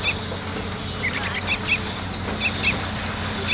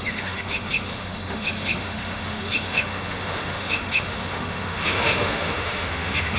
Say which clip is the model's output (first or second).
second